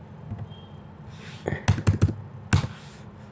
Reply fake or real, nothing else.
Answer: real